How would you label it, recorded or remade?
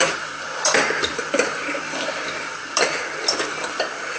recorded